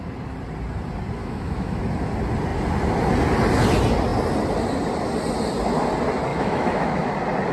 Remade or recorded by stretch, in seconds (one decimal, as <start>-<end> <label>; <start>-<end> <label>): 0.0-1.2 recorded; 1.2-1.8 remade; 1.8-6.3 recorded; 6.3-7.1 remade; 7.1-7.5 recorded